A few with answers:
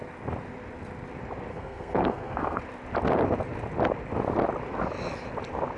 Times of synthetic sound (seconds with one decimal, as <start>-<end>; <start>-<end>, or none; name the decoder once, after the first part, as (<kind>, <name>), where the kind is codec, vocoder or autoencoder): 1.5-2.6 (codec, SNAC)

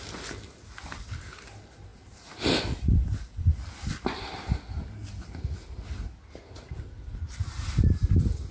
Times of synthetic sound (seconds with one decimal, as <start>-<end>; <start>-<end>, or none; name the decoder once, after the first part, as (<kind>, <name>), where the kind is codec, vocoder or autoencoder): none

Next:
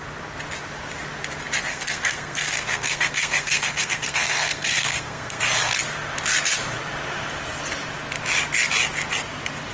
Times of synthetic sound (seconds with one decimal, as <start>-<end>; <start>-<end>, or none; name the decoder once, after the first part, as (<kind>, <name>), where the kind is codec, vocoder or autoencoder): 1.7-5.4 (codec, SNAC)

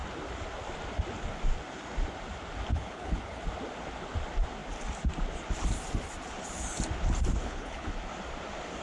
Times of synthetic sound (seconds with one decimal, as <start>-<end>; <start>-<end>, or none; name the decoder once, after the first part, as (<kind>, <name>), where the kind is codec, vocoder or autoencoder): 2.7-3.4 (codec, HILCodec); 7.4-7.9

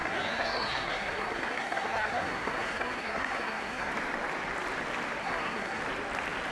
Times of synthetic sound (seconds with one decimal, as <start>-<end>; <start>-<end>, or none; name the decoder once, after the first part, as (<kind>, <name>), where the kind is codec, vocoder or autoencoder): 0.0-3.9 (codec, SNAC); 5.2-5.8

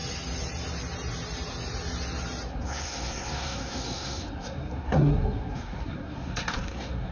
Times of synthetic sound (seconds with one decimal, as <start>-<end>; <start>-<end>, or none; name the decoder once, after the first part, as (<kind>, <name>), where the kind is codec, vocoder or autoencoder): 2.5-7.1 (codec, SNAC)

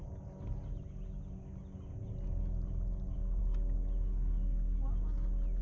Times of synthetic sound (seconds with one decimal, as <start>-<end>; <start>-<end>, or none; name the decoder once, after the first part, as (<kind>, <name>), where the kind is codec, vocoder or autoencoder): none

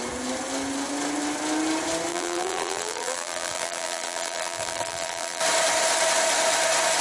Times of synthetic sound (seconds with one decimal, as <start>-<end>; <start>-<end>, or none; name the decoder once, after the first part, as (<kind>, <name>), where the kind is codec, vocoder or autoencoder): 2.1-5.4 (vocoder, BigVGAN v2)